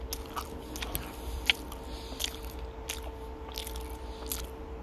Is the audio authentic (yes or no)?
yes